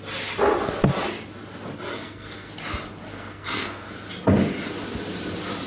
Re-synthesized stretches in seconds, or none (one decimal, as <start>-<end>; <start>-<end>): 1.9-2.5; 3.1-3.9